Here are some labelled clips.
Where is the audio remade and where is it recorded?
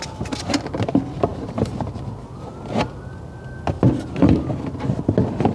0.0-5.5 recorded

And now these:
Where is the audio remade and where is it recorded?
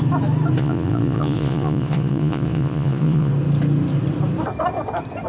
0.0-0.6 recorded; 0.6-3.3 remade; 3.3-5.3 recorded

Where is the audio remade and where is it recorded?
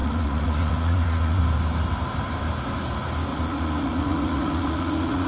0.0-1.4 remade; 1.4-3.3 recorded; 3.3-5.3 remade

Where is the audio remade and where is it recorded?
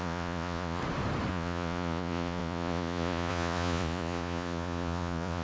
0.0-0.8 remade; 0.8-1.3 recorded; 1.3-5.4 remade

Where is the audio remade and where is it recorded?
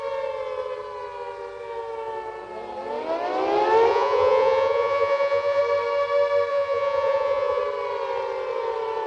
0.0-3.9 recorded; 3.9-5.6 remade; 5.6-6.5 recorded; 6.5-7.6 remade; 7.6-9.1 recorded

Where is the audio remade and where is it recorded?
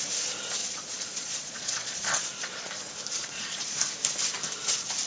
0.0-0.6 recorded; 0.6-2.7 remade; 2.7-3.2 recorded; 3.2-3.8 remade; 3.8-5.1 recorded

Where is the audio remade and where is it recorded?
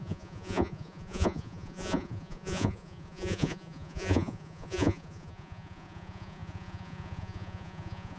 0.0-8.2 remade